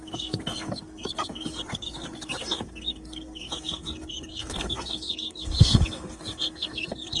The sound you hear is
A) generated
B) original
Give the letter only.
A